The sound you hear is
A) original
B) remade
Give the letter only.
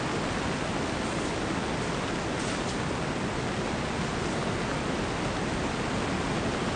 A